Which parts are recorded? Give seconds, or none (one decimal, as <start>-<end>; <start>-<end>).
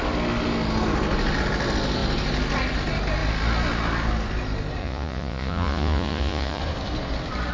0.0-4.8; 6.6-7.5